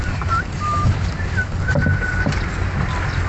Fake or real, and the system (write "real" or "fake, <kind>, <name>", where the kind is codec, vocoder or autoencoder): real